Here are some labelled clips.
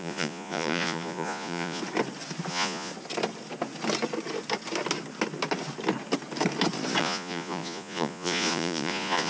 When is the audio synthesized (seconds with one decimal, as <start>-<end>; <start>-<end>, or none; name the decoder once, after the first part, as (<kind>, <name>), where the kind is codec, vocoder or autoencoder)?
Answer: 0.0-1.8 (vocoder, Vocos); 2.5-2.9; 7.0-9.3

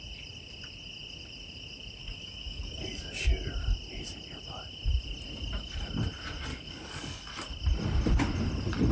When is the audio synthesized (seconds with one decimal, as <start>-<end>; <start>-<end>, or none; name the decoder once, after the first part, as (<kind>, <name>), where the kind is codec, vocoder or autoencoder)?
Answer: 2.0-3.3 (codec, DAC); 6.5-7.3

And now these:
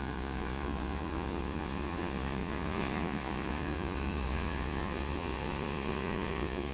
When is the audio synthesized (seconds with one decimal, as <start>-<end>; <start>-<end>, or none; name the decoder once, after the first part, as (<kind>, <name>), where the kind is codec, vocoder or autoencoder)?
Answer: 0.0-6.7 (vocoder, Vocos)

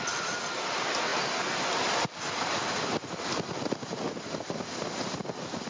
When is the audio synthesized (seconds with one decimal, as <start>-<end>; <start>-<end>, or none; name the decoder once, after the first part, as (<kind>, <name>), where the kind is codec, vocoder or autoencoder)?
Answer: none

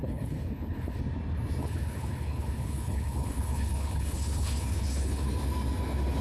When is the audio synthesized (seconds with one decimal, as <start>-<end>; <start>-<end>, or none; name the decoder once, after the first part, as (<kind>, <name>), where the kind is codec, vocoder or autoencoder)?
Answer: 0.0-1.0 (codec, HILCodec); 1.6-5.3